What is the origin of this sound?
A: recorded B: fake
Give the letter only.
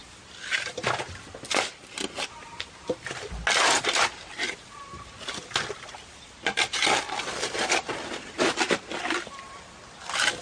A